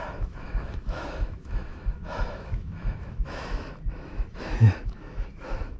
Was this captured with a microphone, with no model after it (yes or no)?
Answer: no